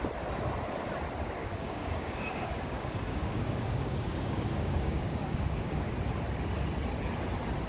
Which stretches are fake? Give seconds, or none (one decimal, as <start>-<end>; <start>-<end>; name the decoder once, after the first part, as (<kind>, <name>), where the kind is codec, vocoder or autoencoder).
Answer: 1.4-5.9 (codec, DAC)